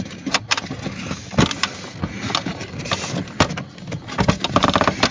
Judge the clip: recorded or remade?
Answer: recorded